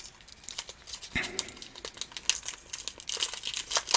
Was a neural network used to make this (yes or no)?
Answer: no